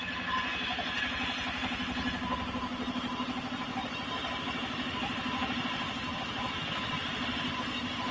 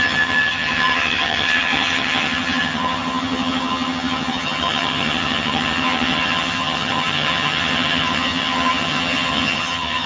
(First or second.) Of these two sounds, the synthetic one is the second